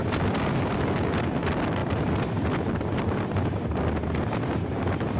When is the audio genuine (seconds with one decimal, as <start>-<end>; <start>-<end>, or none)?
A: 0.0-5.2